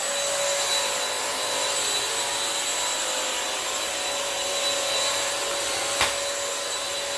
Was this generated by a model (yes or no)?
no